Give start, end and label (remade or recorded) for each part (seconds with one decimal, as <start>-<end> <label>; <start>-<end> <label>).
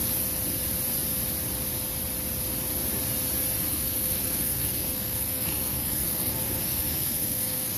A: 0.0-3.7 recorded; 3.7-7.8 remade